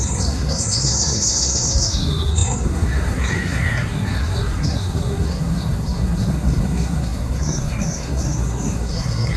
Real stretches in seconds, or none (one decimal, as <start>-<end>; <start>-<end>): none